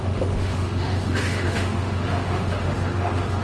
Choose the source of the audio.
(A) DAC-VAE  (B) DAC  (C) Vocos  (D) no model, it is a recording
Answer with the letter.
A